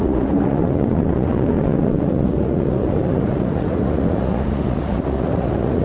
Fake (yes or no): yes